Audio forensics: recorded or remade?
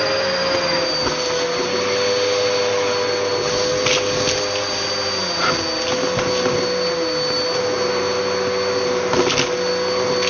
recorded